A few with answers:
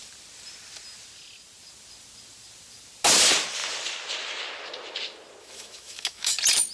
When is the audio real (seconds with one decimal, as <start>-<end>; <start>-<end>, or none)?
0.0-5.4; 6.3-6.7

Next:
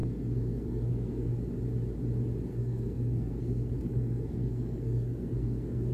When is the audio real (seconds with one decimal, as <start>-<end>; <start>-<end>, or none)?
1.3-2.5

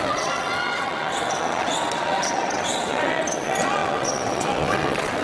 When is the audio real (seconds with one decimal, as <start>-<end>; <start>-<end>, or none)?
none

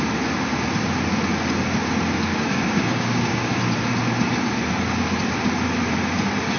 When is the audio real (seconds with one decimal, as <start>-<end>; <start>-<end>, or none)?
0.0-2.3; 3.6-6.6

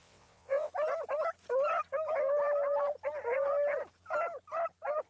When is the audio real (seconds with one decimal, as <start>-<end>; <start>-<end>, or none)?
0.7-5.1

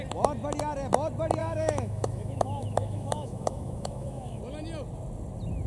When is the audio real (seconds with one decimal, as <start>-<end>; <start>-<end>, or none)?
0.0-1.4; 4.4-5.7

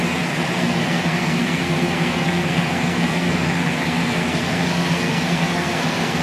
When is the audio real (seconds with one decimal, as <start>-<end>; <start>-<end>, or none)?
none